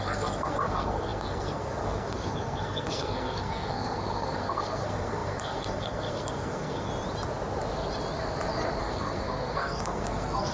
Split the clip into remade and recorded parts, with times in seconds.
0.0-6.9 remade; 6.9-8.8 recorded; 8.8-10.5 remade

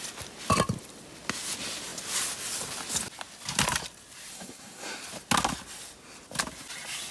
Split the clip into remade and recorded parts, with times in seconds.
0.0-4.3 recorded; 4.3-5.0 remade; 5.0-7.1 recorded